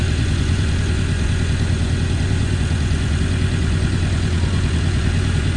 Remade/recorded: remade